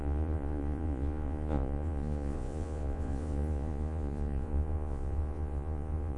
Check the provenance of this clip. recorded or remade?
remade